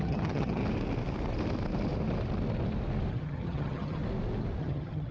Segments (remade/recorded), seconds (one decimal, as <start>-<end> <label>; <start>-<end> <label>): 0.0-0.6 remade; 0.6-3.1 recorded; 3.1-4.0 remade; 4.0-4.6 recorded; 4.6-5.1 remade